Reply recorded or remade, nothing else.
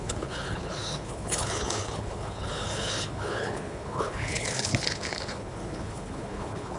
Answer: remade